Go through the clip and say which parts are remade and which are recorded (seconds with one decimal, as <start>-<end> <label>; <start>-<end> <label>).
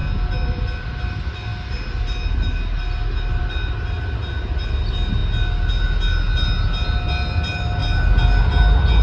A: 0.0-9.0 recorded